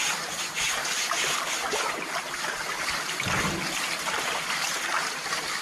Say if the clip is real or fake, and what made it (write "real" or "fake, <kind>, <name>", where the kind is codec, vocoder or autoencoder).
real